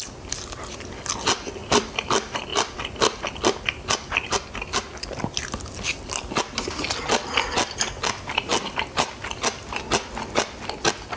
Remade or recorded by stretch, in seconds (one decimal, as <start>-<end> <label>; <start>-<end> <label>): 0.0-1.6 recorded; 1.6-2.1 remade; 2.1-8.5 recorded; 8.5-9.1 remade; 9.1-11.2 recorded